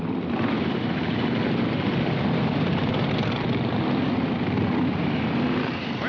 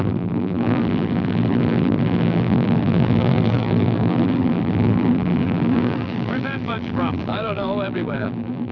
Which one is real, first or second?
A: first